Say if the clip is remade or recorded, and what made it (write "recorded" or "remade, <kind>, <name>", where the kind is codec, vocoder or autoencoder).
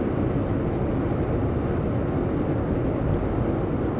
recorded